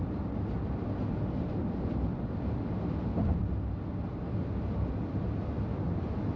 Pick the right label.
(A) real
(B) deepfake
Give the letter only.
A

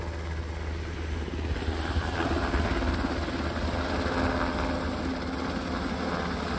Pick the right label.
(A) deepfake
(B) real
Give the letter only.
B